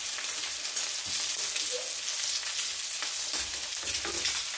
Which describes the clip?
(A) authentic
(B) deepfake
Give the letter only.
A